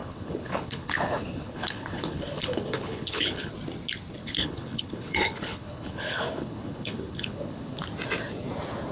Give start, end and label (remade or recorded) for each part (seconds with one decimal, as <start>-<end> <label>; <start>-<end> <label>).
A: 0.0-3.5 remade; 3.5-4.2 recorded; 4.2-7.8 remade; 7.8-8.9 recorded